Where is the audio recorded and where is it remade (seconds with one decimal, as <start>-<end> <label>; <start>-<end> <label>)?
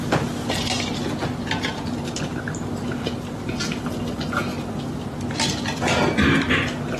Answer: 0.0-7.0 recorded